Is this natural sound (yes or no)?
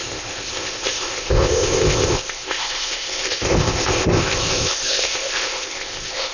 no